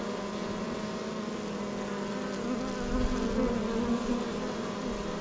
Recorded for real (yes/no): yes